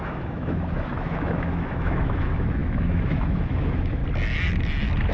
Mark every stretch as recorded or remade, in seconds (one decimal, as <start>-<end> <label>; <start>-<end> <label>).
0.0-4.0 remade; 4.0-5.1 recorded